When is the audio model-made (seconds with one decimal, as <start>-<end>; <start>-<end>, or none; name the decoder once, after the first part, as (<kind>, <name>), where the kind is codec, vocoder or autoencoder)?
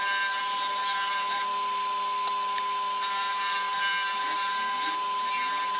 none